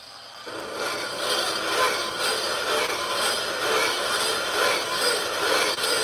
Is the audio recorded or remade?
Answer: recorded